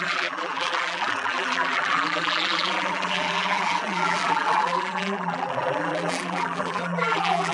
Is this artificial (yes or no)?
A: yes